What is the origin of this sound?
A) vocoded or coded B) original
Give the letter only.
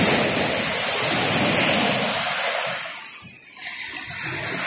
B